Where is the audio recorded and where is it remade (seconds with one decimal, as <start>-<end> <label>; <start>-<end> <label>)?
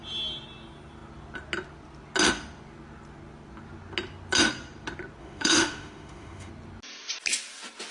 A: 0.0-5.2 recorded; 5.2-6.5 remade; 6.5-7.9 recorded